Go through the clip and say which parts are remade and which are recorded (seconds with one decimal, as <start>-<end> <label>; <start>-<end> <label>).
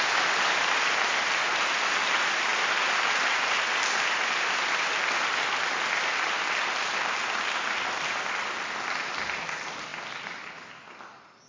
0.0-11.5 recorded